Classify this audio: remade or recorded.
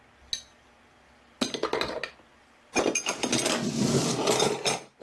recorded